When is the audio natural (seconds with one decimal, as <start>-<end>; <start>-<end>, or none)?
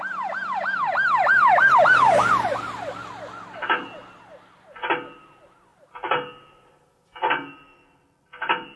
0.0-8.8